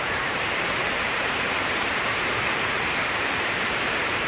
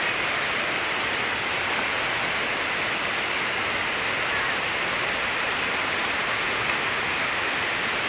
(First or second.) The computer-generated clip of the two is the first